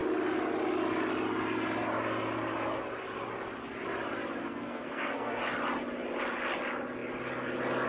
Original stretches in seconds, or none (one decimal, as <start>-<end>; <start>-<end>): 0.0-4.4; 5.4-7.9